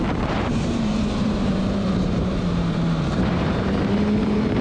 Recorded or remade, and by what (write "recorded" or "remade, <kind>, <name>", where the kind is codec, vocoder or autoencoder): remade, vocoder, BigVGAN v2